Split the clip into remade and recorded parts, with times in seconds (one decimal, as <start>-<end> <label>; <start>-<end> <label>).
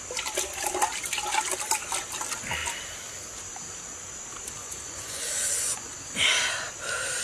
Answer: 0.0-4.6 recorded; 4.6-5.9 remade; 5.9-7.2 recorded